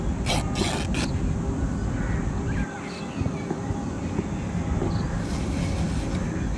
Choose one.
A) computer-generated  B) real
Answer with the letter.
B